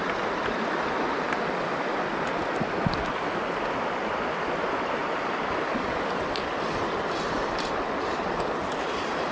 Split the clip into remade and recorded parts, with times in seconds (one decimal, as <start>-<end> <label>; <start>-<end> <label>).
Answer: 0.0-9.3 recorded

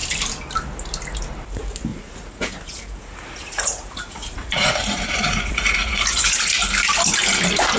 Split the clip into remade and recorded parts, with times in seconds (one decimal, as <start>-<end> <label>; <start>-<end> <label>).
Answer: 0.0-1.9 recorded; 1.9-6.6 remade; 6.6-7.8 recorded

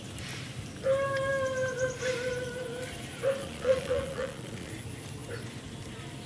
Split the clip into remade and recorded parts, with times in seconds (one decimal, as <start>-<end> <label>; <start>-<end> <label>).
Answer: 0.0-3.4 recorded; 3.4-4.7 remade; 4.7-6.3 recorded

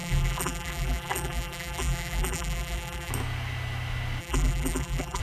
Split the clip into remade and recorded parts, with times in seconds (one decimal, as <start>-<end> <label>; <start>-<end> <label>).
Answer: 0.0-3.1 remade; 3.1-4.2 recorded; 4.2-5.2 remade

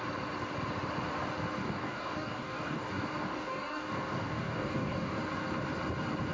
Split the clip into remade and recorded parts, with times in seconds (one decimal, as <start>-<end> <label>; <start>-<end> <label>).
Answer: 0.0-1.6 recorded; 1.6-5.2 remade; 5.2-6.3 recorded

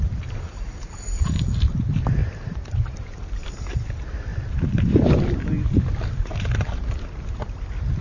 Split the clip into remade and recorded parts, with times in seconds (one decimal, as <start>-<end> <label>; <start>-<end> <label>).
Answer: 0.0-2.2 recorded; 2.2-3.8 remade; 3.8-4.3 recorded; 4.3-5.9 remade; 5.9-8.0 recorded

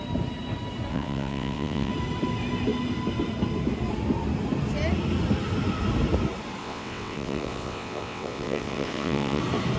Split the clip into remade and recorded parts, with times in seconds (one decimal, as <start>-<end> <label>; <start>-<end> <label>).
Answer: 0.0-0.9 recorded; 0.9-1.9 remade; 1.9-6.6 recorded; 6.6-9.4 remade; 9.4-9.8 recorded